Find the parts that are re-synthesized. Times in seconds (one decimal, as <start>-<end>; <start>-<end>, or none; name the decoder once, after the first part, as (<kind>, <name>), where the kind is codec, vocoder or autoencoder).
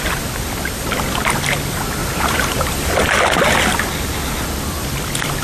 2.0-3.1 (vocoder, BigVGAN v2)